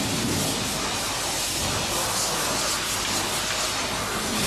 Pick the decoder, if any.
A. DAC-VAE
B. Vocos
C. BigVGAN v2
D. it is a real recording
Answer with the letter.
D